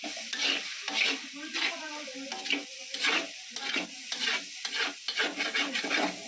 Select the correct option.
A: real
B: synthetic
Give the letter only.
A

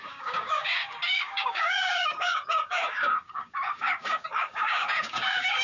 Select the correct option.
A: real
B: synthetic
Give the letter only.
B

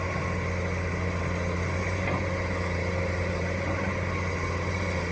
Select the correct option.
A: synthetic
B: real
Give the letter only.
B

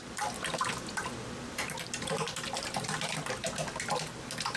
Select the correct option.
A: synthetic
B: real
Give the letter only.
B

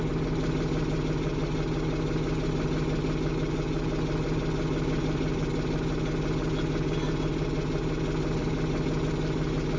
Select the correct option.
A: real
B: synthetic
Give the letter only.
A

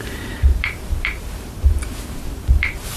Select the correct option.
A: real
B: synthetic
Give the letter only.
B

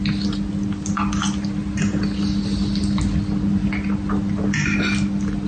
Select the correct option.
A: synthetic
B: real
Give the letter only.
B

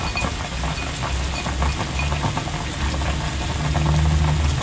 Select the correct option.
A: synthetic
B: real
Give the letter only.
B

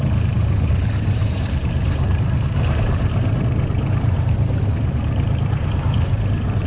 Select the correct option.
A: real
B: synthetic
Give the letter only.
B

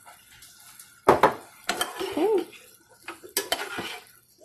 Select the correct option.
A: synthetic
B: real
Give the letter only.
B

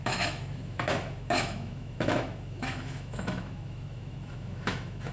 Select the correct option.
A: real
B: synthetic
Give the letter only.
B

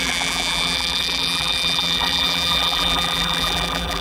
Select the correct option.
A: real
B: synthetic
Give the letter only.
B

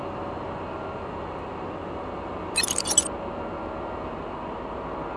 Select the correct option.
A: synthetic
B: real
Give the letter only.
B